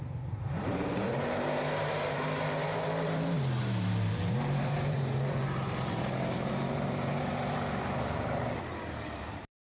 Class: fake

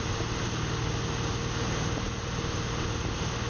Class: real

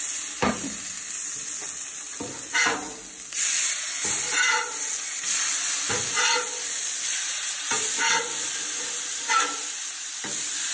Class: real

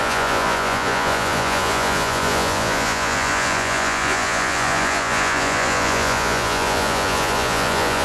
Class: fake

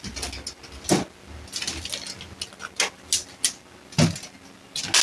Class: real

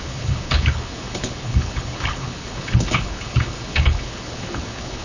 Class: fake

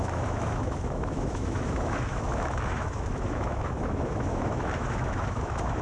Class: fake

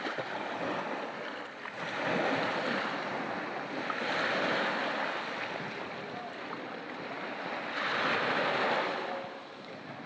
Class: real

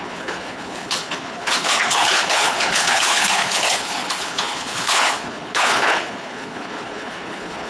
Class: fake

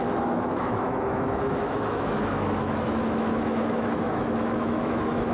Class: fake